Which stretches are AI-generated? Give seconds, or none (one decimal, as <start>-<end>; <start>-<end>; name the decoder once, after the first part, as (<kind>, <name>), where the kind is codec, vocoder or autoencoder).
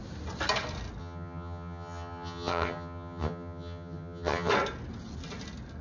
1.0-4.5 (vocoder, HiFi-GAN)